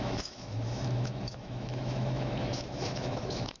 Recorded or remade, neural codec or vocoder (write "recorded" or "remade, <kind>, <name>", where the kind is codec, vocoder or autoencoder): remade, autoencoder, DAC-VAE